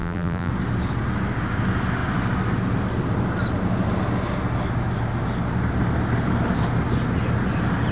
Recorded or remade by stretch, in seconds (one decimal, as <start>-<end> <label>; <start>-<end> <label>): 0.0-0.5 remade; 0.5-7.9 recorded